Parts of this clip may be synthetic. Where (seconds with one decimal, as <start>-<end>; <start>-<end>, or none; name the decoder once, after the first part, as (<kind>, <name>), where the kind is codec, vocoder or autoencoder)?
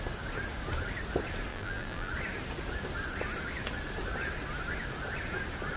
1.5-2.1 (vocoder, BigVGAN v2)